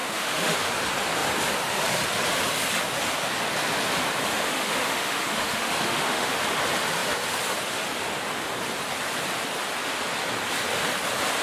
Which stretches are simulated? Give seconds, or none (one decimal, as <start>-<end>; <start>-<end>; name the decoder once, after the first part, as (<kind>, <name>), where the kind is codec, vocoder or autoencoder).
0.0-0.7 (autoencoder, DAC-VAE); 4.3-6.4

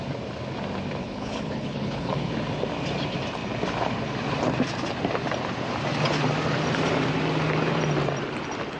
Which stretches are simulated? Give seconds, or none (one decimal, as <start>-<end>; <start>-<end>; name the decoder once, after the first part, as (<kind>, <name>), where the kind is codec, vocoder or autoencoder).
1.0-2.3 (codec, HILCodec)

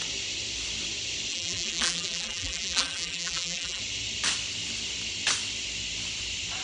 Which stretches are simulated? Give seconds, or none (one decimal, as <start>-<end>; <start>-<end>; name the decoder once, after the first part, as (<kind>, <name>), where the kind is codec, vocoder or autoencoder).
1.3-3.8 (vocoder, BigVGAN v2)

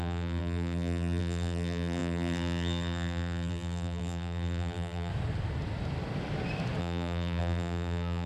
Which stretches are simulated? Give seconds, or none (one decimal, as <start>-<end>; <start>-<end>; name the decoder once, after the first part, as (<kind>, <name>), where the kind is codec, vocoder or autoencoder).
0.0-5.1 (vocoder, BigVGAN v2); 6.8-8.3